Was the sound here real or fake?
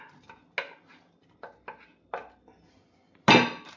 real